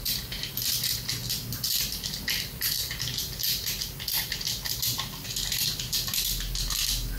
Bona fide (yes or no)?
yes